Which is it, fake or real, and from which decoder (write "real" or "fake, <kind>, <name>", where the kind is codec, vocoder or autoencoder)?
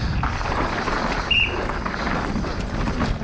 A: real